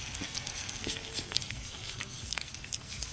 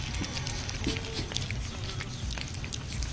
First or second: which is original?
second